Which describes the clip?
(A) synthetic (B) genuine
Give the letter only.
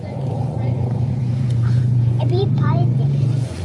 A